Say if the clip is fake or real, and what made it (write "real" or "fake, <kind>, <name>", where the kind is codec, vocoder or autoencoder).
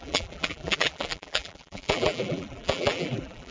fake, vocoder, BigVGAN v2